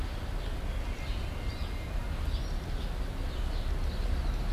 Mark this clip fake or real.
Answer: real